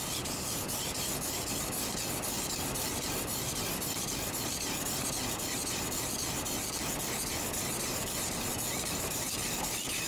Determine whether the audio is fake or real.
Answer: real